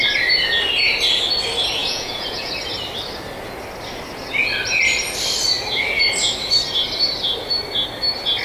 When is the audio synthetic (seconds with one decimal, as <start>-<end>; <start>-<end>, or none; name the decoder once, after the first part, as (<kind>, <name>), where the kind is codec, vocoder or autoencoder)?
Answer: 1.8-2.5 (vocoder, Vocos)

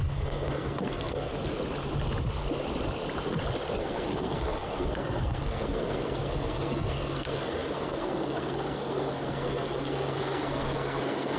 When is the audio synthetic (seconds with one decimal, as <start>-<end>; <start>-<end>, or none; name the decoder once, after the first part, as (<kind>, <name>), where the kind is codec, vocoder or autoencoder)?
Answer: 0.0-1.3 (codec, SNAC); 3.8-11.4